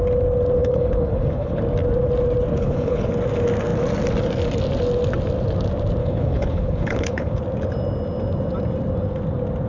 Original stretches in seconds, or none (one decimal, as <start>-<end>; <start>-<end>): 0.0-0.6; 1.6-2.5; 3.1-6.0; 7.4-9.7